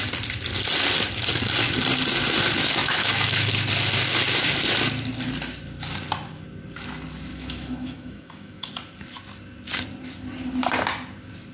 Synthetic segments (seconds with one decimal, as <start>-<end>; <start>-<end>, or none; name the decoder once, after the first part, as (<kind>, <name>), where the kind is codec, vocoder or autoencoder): 2.8-3.5 (autoencoder, DAC-VAE); 7.3-8.7